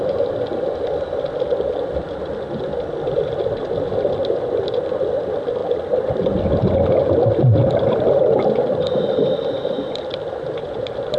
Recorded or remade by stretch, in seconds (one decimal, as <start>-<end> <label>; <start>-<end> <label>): 0.0-5.6 recorded; 5.6-6.4 remade; 6.4-11.2 recorded